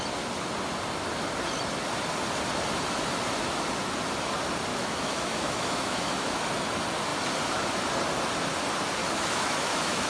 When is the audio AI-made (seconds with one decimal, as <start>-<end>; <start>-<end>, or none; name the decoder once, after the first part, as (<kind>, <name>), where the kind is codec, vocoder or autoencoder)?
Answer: 4.7-6.4 (autoencoder, DAC-VAE); 9.0-10.1